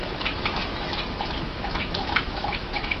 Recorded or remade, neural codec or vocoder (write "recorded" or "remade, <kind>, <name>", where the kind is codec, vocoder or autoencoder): remade, autoencoder, DAC-VAE